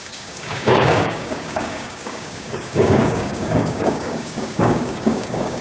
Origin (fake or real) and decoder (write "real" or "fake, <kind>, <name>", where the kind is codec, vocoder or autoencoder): fake, codec, DAC